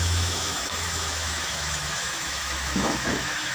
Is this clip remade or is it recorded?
remade